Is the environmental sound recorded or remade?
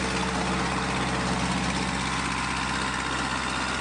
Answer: recorded